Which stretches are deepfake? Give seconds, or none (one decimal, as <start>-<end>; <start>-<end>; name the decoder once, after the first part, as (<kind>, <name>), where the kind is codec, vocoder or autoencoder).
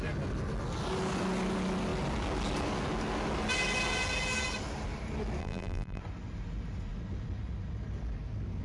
5.4-6.0 (vocoder, BigVGAN v2)